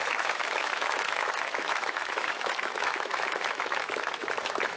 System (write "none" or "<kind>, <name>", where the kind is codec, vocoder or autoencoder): autoencoder, DAC-VAE